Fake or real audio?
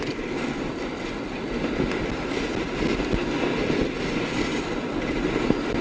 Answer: real